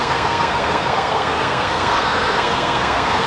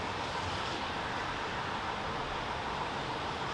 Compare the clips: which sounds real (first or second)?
second